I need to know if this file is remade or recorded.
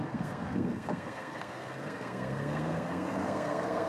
remade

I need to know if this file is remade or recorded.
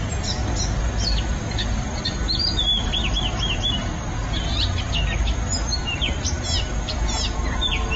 recorded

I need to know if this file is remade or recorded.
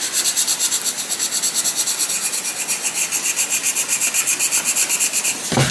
recorded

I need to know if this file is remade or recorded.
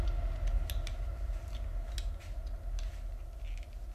recorded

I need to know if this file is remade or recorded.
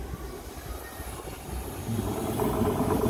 recorded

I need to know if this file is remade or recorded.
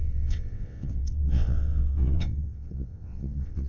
remade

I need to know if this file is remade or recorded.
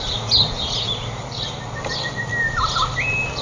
recorded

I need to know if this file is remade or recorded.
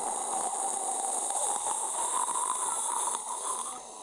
recorded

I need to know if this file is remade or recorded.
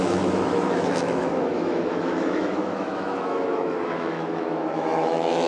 remade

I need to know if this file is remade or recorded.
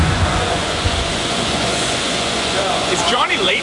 remade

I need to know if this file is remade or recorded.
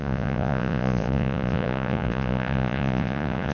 remade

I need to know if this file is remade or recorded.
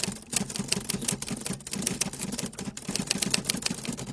recorded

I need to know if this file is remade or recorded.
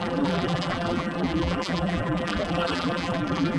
remade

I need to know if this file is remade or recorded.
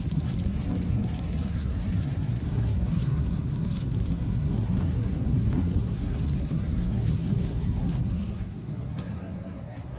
remade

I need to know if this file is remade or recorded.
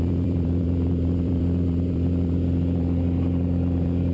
remade